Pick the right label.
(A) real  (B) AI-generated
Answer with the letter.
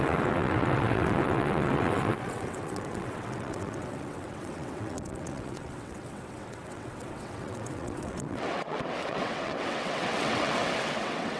B